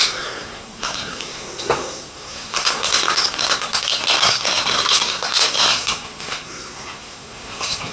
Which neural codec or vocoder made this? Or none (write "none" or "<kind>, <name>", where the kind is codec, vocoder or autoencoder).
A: codec, SNAC